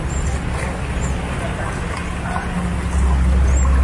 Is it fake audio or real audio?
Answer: real